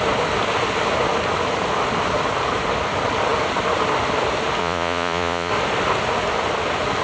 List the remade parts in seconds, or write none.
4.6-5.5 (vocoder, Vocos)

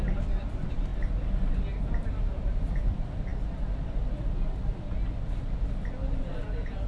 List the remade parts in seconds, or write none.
none

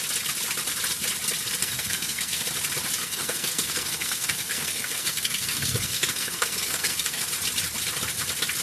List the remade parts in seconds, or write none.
1.6-2.4 (codec, SNAC); 3.0-7.3

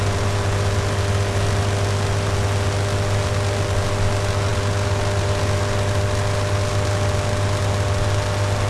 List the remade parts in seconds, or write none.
none

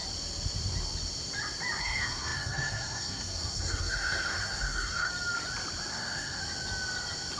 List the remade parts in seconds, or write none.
1.8-5.1 (codec, SNAC); 5.9-6.4

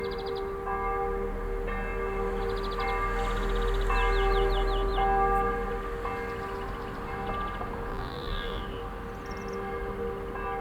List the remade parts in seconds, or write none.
7.9-8.6 (vocoder, BigVGAN v2)